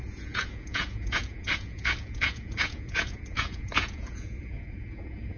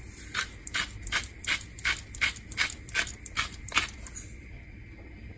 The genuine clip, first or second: second